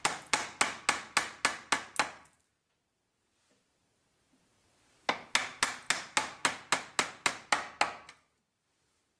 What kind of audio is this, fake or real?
real